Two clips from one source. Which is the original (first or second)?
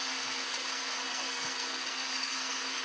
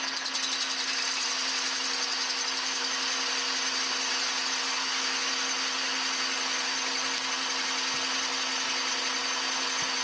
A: second